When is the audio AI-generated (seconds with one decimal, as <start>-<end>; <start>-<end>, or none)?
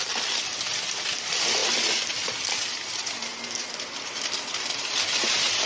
1.6-5.0